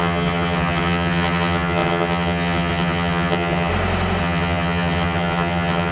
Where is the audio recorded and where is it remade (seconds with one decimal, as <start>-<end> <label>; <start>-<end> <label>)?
0.0-3.7 remade; 3.7-4.2 recorded; 4.2-5.9 remade